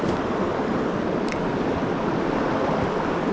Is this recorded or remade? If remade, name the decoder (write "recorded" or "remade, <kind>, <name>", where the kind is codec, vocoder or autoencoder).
recorded